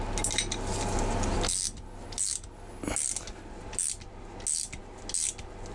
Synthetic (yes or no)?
no